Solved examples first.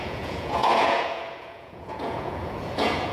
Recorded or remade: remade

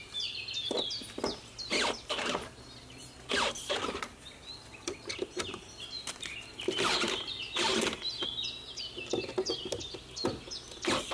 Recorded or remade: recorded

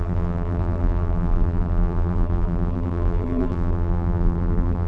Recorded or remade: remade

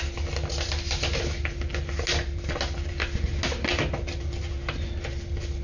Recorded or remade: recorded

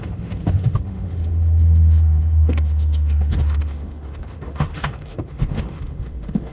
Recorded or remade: remade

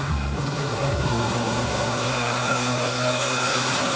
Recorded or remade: remade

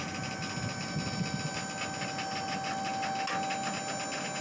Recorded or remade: recorded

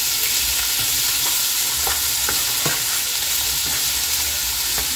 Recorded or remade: recorded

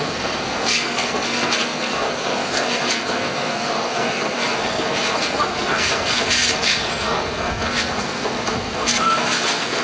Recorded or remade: remade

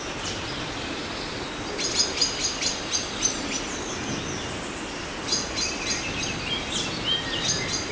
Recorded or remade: recorded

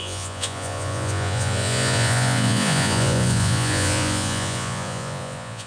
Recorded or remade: remade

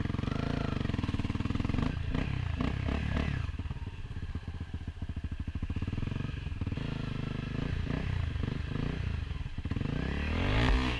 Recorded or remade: recorded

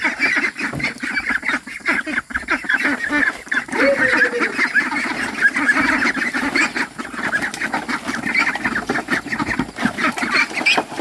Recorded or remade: recorded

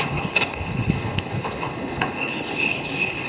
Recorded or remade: remade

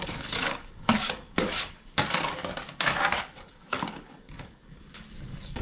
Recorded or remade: remade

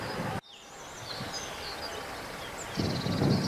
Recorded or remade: recorded